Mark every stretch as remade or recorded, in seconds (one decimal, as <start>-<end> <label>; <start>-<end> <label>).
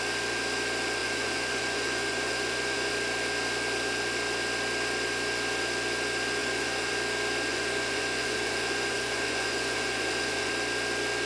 0.0-1.0 recorded; 1.0-2.9 remade; 2.9-6.4 recorded; 6.4-6.9 remade; 6.9-7.5 recorded; 7.5-10.5 remade; 10.5-11.3 recorded